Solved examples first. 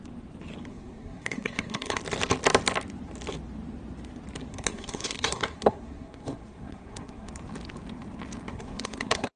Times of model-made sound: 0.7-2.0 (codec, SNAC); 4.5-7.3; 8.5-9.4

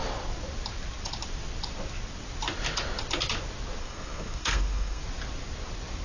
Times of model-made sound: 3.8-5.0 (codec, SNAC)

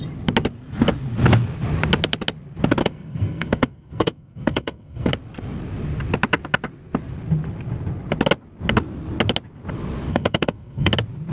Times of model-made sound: 2.8-5.1 (codec, SNAC); 10.1-10.9